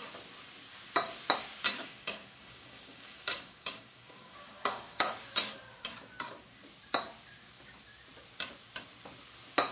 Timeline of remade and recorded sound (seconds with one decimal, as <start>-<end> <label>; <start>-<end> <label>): 0.0-1.8 recorded; 1.8-5.3 remade; 5.3-9.7 recorded